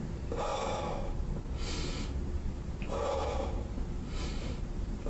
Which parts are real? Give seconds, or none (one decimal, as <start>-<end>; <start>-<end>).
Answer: 0.5-2.5